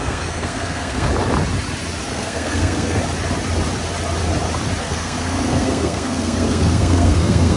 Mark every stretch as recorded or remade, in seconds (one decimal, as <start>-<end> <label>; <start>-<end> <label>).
0.0-1.1 remade; 1.1-2.1 recorded; 2.1-3.0 remade; 3.0-4.8 recorded; 4.8-7.6 remade